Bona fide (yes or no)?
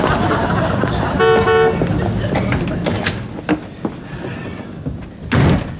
yes